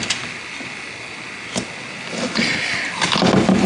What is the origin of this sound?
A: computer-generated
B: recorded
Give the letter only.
B